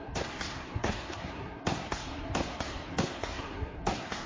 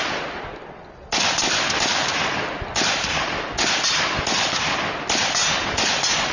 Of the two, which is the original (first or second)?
second